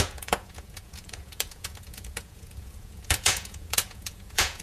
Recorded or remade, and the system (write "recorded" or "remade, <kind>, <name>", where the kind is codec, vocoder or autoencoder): remade, vocoder, Vocos